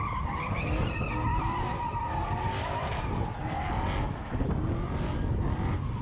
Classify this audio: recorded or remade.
recorded